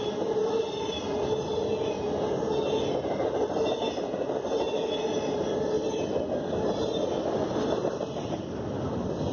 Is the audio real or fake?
real